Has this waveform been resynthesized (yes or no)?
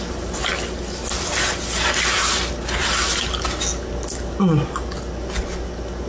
no